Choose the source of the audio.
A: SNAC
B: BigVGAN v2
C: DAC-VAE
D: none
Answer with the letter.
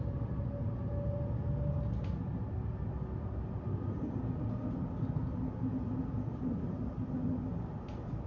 D